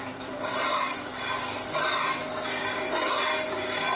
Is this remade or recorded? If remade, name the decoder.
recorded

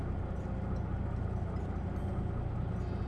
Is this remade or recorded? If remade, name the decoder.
recorded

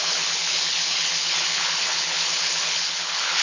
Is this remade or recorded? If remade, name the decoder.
remade, codec, HILCodec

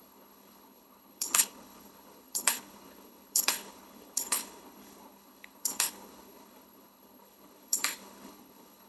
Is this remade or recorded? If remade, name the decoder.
remade, codec, HILCodec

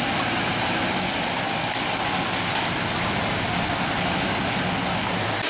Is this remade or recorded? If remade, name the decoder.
recorded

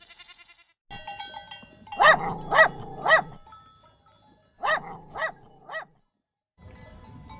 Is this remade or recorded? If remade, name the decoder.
recorded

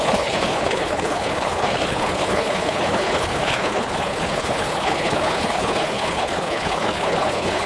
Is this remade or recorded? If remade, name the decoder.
remade, codec, HILCodec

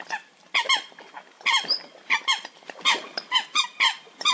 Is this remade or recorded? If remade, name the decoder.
recorded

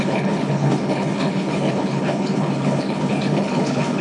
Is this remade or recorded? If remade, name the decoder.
remade, codec, HILCodec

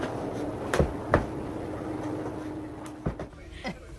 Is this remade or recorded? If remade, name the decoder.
recorded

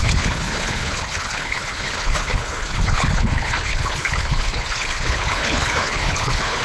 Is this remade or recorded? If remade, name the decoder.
remade, codec, HILCodec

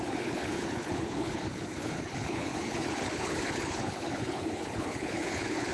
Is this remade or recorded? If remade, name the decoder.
remade, codec, HILCodec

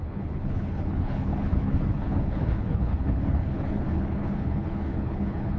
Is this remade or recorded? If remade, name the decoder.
remade, codec, HILCodec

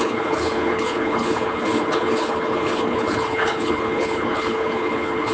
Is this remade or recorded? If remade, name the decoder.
remade, codec, HILCodec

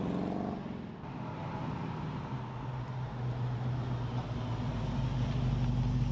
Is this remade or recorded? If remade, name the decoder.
recorded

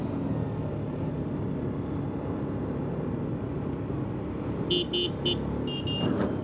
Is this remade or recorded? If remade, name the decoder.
recorded